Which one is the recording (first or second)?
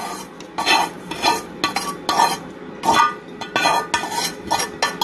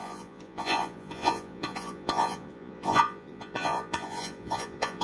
first